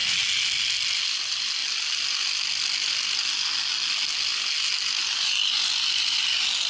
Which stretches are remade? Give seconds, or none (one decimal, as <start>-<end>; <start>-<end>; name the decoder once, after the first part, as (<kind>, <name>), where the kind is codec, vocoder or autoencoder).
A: none